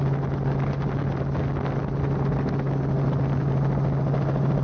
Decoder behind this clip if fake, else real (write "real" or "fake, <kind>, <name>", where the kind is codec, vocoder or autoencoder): real